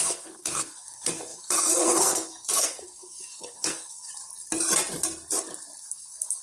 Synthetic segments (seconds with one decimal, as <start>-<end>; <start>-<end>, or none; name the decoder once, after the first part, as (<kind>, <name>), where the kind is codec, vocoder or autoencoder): 0.0-4.1 (codec, SNAC); 5.8-6.4